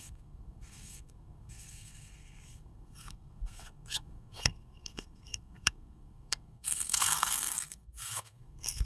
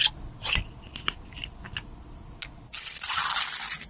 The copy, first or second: first